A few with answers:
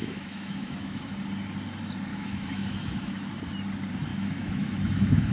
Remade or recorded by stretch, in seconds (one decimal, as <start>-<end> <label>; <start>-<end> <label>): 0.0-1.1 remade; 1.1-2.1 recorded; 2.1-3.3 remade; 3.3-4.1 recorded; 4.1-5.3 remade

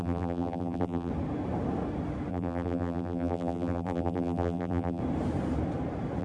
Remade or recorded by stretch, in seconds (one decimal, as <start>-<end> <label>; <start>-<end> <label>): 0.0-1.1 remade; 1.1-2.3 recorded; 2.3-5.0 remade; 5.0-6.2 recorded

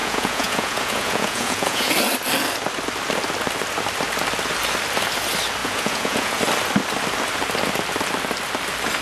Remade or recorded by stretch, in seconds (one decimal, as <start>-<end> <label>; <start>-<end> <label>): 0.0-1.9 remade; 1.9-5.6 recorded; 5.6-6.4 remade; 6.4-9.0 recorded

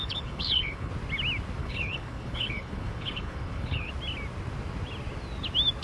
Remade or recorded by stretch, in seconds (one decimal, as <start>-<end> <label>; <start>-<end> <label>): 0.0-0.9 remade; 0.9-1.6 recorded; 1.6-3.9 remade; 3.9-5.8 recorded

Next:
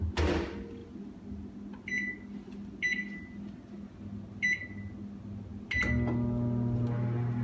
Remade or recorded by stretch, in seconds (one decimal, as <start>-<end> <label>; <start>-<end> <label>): 0.0-7.4 recorded